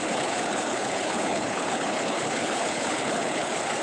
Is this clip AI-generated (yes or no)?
yes